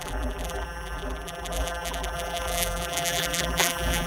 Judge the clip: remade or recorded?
remade